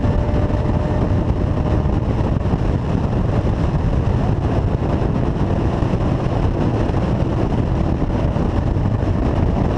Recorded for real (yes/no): yes